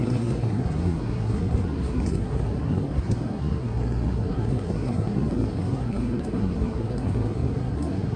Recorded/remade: remade